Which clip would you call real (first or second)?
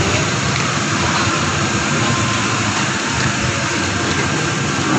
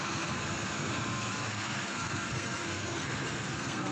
first